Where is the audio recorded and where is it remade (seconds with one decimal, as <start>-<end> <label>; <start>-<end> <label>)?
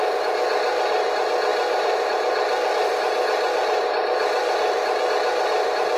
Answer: 0.0-1.5 recorded; 1.5-5.1 remade; 5.1-6.0 recorded